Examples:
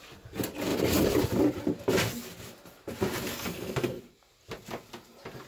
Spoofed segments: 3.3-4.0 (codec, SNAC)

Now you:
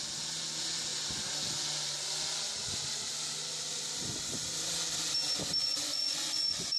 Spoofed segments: 5.6-6.8 (vocoder, Vocos)

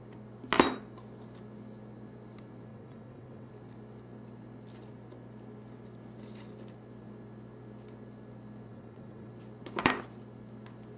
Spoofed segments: 2.7-3.5 (vocoder, WaveNeXt); 8.7-9.3

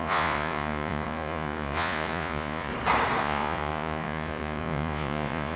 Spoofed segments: 0.0-2.7 (vocoder, Vocos); 3.2-5.6

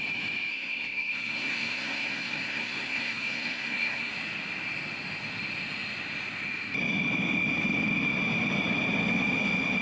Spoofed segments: 0.5-4.1 (codec, SNAC)

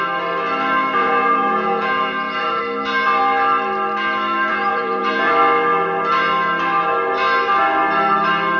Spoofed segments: 1.0-2.6 (vocoder, Vocos); 4.5-5.3